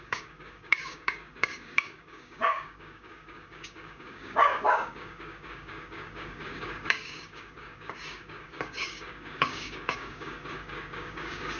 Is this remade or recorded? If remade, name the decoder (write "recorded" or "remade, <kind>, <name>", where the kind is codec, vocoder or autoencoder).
remade, codec, DAC